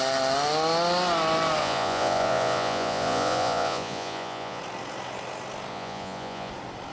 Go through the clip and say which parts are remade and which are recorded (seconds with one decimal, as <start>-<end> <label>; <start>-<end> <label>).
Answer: 0.0-1.6 recorded; 1.6-4.6 remade; 4.6-5.7 recorded; 5.7-6.5 remade; 6.5-6.9 recorded